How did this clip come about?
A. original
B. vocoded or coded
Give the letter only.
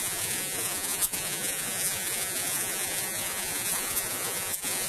B